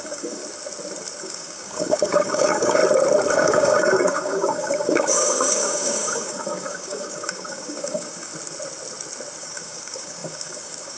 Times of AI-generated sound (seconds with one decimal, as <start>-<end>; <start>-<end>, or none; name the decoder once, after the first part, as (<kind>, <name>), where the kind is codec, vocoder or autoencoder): 0.0-0.4 (codec, DAC); 1.2-2.8; 3.3-8.3; 9.4-11.0